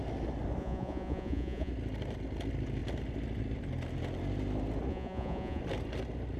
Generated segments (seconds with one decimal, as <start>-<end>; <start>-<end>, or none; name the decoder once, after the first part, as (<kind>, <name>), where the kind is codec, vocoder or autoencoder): 0.6-1.7 (vocoder, Vocos); 4.9-5.6